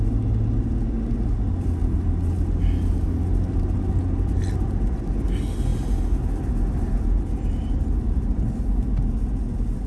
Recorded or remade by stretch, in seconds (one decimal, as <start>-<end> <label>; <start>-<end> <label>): 0.0-9.9 recorded